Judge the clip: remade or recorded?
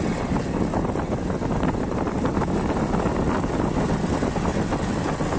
recorded